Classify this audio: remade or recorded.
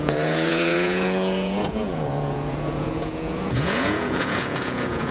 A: remade